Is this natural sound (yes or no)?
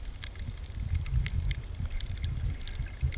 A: yes